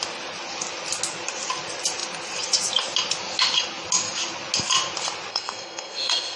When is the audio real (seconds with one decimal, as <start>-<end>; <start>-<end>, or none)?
0.0-5.3